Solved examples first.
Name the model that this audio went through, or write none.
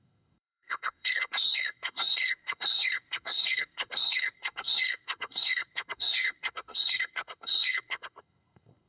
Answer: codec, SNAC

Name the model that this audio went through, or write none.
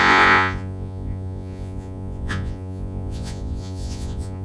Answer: vocoder, Vocos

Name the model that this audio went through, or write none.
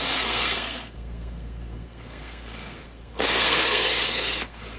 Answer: codec, SNAC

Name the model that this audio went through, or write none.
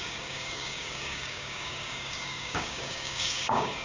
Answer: codec, DAC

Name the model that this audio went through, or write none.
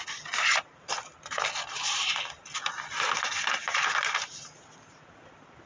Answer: none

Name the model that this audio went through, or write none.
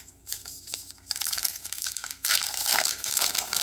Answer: codec, SNAC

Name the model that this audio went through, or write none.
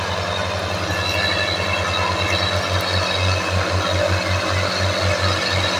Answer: none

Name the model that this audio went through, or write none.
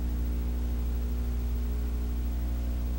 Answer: none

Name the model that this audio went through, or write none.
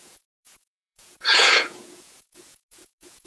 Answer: vocoder, Vocos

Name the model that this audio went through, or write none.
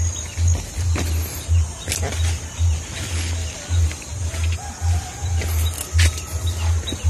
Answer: none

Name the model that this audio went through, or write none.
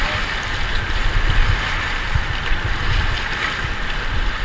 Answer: none